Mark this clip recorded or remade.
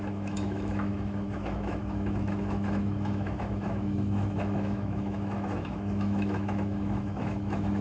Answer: remade